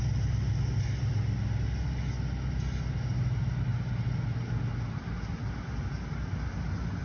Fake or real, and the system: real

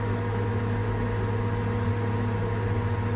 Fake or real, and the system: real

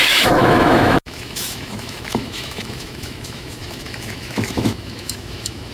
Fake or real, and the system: fake, autoencoder, DAC-VAE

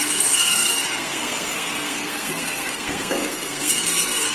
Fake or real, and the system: fake, codec, SNAC